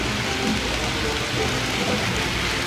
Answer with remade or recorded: recorded